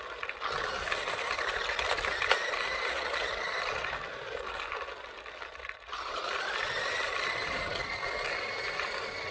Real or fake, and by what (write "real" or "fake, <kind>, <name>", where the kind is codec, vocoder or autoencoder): real